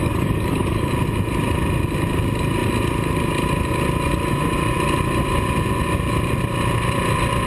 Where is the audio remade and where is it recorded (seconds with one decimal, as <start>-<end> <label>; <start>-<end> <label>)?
0.0-0.9 remade; 0.9-7.5 recorded